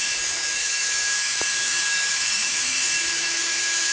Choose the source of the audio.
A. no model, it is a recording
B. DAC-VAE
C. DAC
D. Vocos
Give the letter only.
B